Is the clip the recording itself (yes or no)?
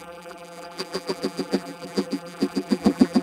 no